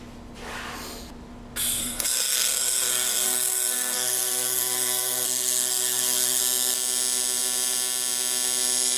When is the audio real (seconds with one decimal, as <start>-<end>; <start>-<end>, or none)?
0.0-1.8; 6.4-9.0